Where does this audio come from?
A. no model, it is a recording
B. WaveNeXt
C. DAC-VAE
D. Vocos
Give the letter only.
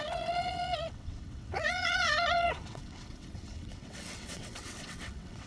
B